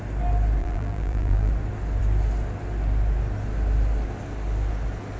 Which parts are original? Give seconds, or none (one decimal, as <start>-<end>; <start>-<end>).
0.0-0.6; 1.5-5.2